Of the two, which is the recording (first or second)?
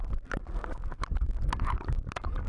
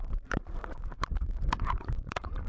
first